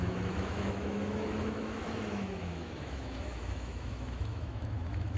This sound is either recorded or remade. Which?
remade